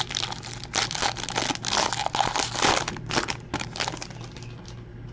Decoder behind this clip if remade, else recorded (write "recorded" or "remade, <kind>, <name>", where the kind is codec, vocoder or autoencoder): recorded